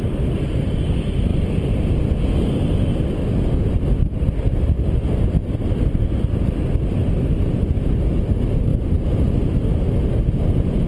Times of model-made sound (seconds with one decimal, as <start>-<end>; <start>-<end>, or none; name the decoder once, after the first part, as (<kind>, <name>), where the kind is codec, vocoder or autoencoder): 1.3-1.9 (vocoder, BigVGAN v2); 5.4-6.0